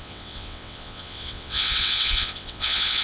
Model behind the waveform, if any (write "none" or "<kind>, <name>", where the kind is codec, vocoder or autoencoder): vocoder, WaveNeXt